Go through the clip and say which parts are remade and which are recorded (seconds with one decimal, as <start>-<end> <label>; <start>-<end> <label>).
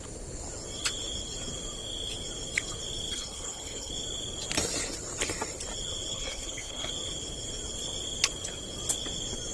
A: 0.0-3.1 recorded; 3.1-3.9 remade; 3.9-6.1 recorded; 6.1-6.9 remade; 6.9-9.5 recorded